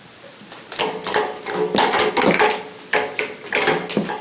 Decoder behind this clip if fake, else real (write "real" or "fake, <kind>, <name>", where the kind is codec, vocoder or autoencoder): real